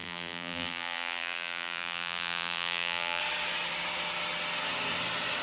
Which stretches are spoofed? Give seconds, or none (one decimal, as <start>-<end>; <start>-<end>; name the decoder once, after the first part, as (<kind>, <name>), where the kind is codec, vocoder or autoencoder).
0.0-3.2 (vocoder, BigVGAN v2)